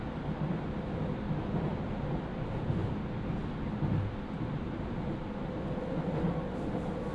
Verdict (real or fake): real